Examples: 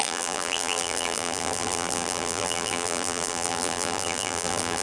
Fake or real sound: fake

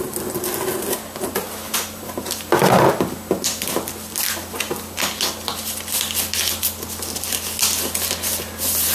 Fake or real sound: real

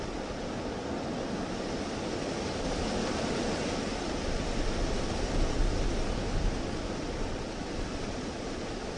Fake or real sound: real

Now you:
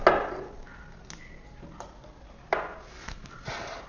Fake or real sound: real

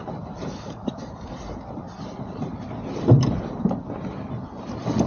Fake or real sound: fake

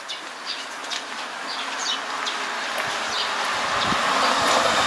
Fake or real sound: real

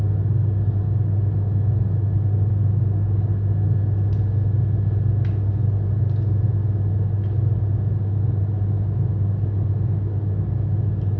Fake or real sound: real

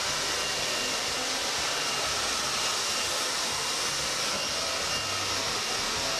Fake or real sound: real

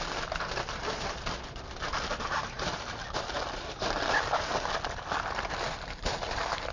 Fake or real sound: fake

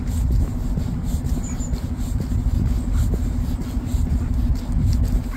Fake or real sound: real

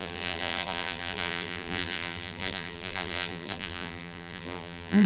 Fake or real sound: fake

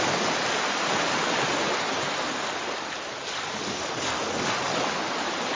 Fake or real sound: real